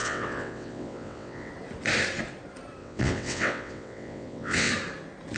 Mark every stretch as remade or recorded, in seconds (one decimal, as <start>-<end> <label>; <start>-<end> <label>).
0.0-1.5 remade; 1.5-2.8 recorded; 2.8-4.7 remade; 4.7-5.4 recorded